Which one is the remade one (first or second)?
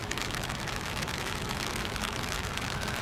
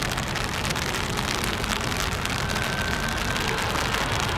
first